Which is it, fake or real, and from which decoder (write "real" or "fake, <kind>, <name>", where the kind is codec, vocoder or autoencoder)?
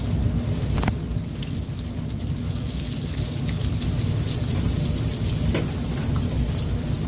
real